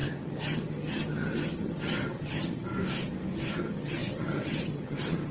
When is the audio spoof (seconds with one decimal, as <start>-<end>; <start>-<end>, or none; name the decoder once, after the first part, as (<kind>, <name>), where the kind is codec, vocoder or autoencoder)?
0.0-2.7 (vocoder, HiFi-GAN); 3.5-5.3

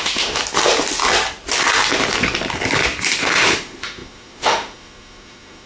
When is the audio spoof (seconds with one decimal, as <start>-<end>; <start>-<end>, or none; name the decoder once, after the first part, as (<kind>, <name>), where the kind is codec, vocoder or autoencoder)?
0.0-0.4 (autoencoder, DAC-VAE); 3.3-5.7